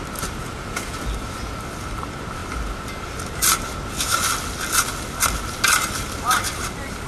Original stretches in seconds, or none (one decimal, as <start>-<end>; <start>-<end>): 0.0-0.4; 1.0-7.1